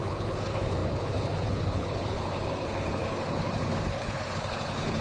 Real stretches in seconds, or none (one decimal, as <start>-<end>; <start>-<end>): none